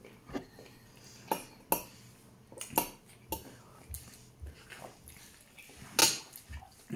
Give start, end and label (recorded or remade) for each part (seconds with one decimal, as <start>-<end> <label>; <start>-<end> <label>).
0.0-7.0 recorded